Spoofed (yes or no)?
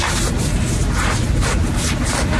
no